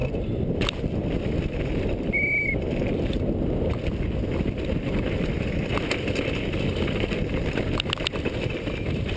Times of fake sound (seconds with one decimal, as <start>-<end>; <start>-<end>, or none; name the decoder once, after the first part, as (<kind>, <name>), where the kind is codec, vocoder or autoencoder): none